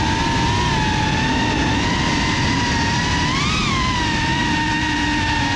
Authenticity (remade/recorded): recorded